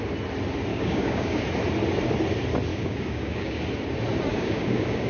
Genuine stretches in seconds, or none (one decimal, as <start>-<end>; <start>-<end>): 0.0-0.7; 1.4-2.7; 3.6-4.3